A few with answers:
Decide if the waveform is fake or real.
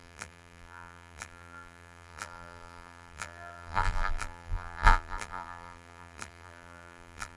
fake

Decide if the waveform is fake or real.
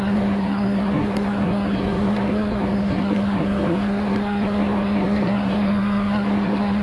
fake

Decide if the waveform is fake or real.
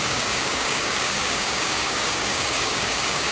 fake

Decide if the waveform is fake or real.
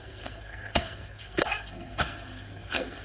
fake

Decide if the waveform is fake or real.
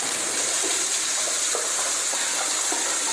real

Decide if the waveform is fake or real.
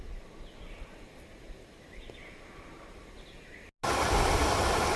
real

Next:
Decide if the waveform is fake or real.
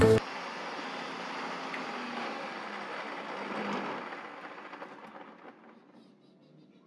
real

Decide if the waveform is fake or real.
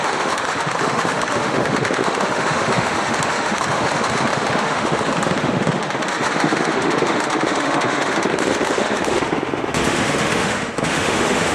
fake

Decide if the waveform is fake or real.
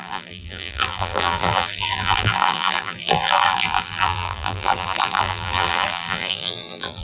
fake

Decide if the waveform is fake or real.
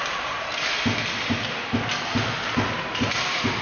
real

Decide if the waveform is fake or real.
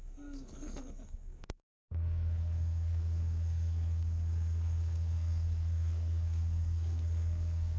fake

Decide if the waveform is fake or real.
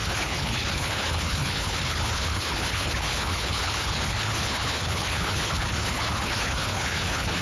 fake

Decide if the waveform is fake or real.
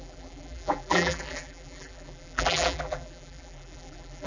fake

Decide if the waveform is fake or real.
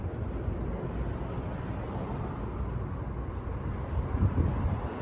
real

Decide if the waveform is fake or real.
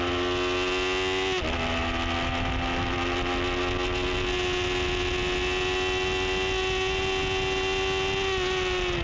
real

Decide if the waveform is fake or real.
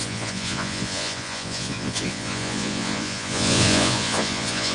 fake